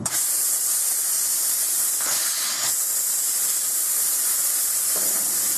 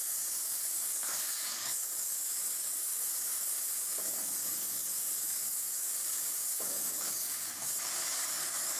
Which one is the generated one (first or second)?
second